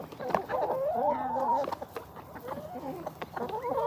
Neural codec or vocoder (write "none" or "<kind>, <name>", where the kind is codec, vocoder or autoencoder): none